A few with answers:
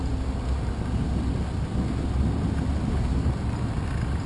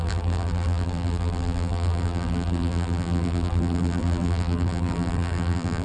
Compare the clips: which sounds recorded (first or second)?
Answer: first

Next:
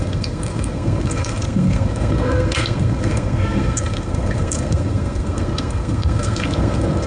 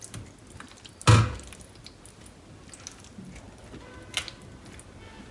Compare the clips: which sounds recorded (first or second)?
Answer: second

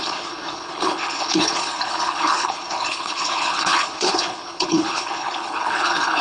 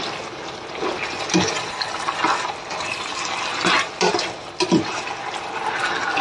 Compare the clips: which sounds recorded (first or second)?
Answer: second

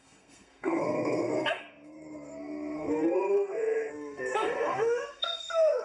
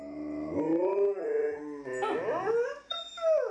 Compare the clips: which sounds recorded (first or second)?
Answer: second